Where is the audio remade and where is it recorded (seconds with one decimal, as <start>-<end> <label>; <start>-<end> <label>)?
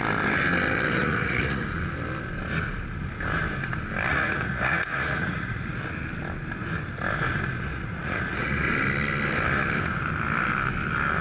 0.0-1.0 recorded; 1.0-1.6 remade; 1.6-4.1 recorded; 4.1-5.8 remade; 5.8-7.7 recorded; 7.7-8.7 remade; 8.7-11.2 recorded